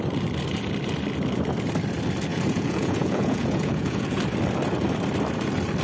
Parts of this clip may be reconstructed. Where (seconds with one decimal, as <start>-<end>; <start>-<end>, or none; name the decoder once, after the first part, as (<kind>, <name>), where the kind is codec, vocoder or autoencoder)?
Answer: 2.3-4.2 (vocoder, Vocos)